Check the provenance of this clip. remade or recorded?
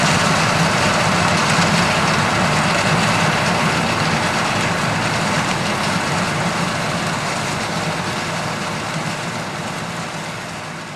recorded